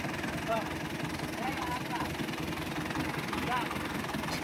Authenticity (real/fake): real